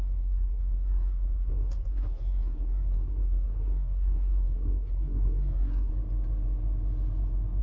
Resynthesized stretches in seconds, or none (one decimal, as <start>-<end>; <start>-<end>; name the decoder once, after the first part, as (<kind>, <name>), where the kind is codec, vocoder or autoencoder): 0.0-5.9 (codec, SNAC)